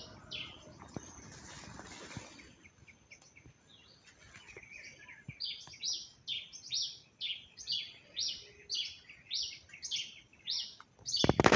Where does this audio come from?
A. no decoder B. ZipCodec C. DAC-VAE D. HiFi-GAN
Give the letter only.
A